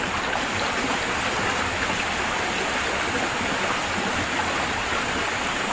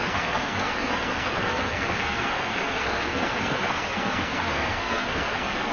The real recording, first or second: first